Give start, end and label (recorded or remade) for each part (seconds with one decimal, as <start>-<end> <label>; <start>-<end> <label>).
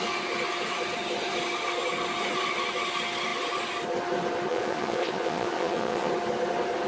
0.0-4.5 recorded; 4.5-6.1 remade; 6.1-6.9 recorded